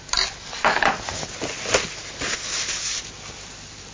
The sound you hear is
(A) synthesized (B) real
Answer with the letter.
B